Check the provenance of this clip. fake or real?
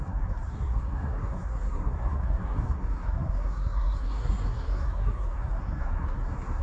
fake